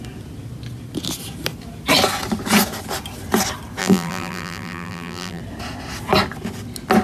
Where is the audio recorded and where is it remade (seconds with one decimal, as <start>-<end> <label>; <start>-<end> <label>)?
0.0-3.8 recorded; 3.8-5.4 remade; 5.4-7.0 recorded